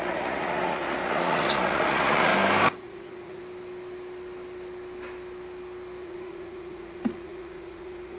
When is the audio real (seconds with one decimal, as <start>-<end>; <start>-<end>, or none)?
2.3-2.8; 3.4-6.0

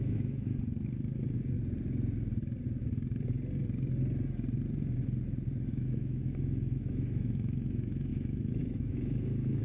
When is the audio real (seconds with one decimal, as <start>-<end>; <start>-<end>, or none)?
0.5-5.7